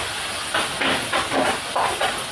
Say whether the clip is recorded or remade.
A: recorded